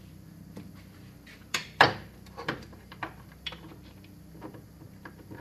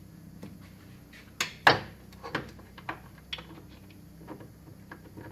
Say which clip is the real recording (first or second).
second